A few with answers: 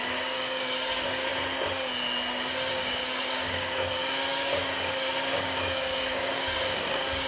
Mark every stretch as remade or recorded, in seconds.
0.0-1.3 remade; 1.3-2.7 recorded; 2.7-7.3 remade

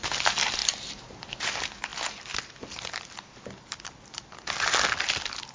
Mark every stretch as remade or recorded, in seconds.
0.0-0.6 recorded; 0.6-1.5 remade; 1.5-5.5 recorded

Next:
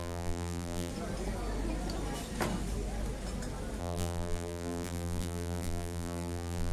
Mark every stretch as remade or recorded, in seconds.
0.0-0.9 remade; 0.9-3.8 recorded; 3.8-6.7 remade

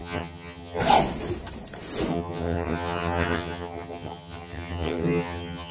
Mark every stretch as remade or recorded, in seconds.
0.0-0.8 remade; 0.8-2.1 recorded; 2.1-5.7 remade